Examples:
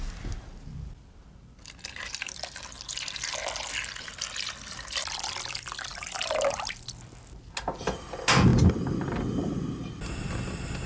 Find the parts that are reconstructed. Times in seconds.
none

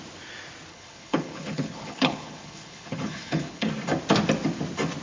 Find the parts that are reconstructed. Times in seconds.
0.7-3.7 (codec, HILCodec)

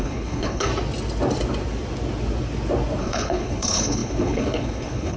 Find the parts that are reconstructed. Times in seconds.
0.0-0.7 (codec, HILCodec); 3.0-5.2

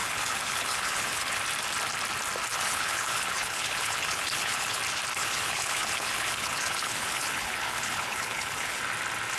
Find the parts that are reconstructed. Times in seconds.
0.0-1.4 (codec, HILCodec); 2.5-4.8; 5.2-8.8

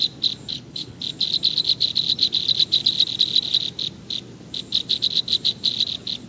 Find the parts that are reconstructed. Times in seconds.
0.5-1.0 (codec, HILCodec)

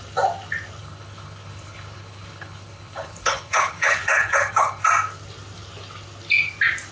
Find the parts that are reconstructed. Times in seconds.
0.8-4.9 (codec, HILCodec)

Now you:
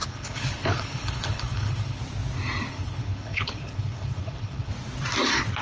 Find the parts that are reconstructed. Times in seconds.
0.0-2.0 (codec, HILCodec); 2.7-4.7

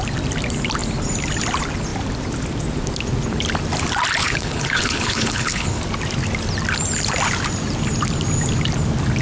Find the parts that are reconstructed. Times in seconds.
4.2-5.8 (codec, HILCodec)